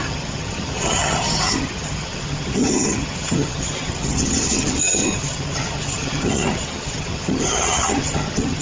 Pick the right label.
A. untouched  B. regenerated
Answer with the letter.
B